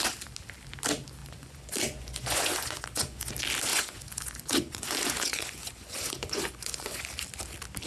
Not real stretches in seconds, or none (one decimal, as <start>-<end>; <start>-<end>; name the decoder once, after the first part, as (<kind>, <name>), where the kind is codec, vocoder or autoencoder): 1.2-3.3 (vocoder, Vocos); 3.7-7.0